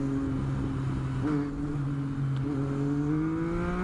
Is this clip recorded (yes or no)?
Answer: yes